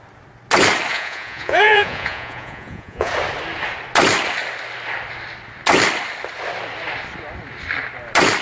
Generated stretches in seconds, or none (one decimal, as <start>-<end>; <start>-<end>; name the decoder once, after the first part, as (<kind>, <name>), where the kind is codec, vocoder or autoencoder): 0.9-3.1 (vocoder, Vocos)